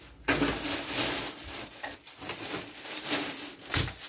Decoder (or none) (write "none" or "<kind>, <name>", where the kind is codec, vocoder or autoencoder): none